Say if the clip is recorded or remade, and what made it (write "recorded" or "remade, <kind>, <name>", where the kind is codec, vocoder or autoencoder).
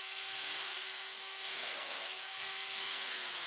remade, codec, SNAC